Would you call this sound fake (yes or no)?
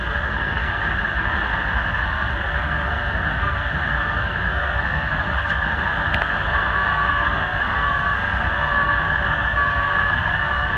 yes